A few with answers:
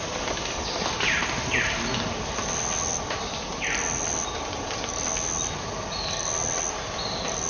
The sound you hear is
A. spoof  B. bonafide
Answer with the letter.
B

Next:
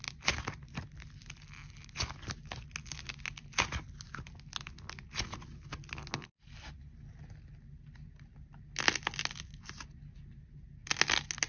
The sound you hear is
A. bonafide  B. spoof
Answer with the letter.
A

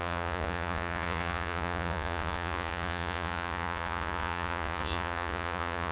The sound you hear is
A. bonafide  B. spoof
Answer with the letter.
B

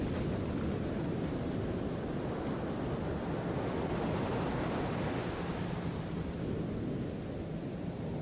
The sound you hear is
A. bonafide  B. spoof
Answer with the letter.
A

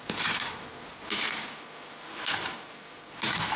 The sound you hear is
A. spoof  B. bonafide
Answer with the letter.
B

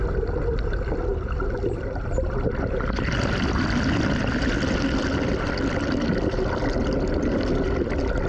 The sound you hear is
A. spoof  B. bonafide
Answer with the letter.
B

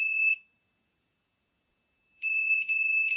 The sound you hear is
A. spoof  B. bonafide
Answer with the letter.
A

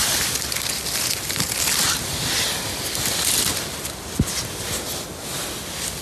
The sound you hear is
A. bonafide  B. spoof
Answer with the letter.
A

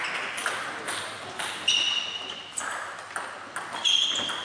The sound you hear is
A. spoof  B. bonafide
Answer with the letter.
B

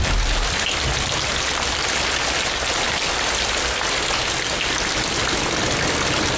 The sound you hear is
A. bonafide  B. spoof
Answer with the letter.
A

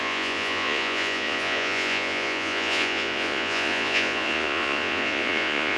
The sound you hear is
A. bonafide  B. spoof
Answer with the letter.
B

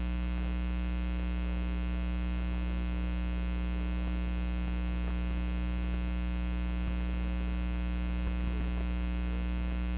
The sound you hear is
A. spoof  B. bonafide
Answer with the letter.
B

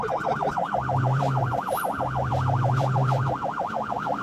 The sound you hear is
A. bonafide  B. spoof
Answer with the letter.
A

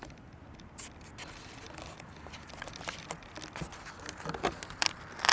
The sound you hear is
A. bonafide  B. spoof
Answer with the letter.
A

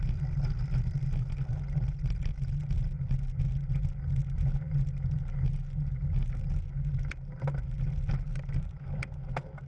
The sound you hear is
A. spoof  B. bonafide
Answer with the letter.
B